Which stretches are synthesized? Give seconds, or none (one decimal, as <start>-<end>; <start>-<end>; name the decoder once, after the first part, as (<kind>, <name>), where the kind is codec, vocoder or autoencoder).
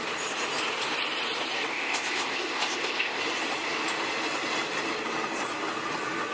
1.7-3.2 (codec, ZipCodec)